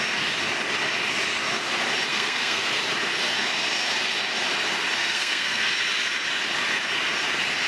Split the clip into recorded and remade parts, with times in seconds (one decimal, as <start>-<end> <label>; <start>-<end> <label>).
0.0-2.1 recorded; 2.1-2.7 remade; 2.7-5.0 recorded; 5.0-5.7 remade; 5.7-7.7 recorded